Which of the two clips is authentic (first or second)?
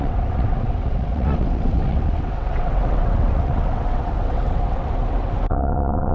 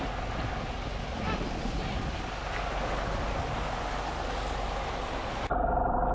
second